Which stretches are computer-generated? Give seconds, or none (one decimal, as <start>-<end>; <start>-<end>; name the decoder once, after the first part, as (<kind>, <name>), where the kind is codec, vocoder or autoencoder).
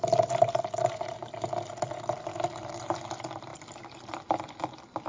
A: none